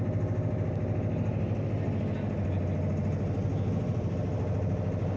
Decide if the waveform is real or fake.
real